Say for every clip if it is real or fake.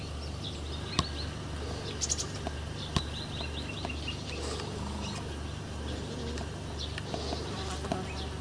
real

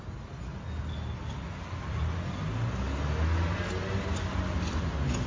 real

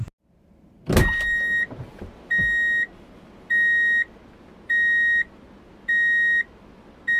real